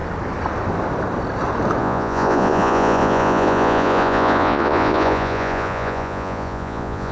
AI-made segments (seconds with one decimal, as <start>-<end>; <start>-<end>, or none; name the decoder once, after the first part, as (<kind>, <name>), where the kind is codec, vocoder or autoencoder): 1.8-7.1 (vocoder, Vocos)